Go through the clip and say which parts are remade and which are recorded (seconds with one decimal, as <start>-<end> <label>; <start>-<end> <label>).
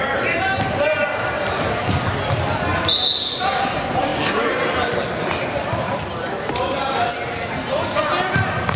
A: 0.0-8.8 recorded